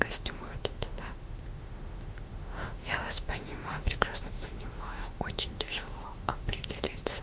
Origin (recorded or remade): remade